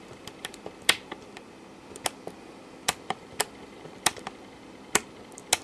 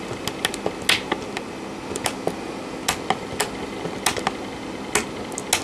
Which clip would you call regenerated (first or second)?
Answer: first